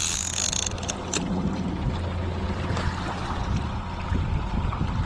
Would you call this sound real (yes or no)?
yes